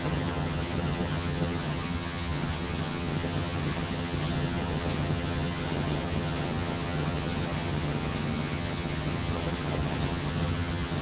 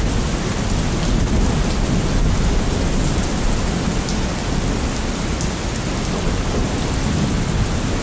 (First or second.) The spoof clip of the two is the first